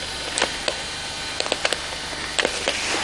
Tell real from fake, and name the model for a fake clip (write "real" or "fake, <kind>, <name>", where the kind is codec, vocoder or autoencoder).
real